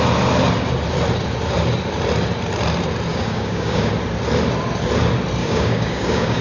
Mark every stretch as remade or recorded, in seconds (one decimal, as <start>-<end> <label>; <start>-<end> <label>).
0.0-3.1 recorded; 3.1-3.9 remade; 3.9-5.4 recorded; 5.4-6.4 remade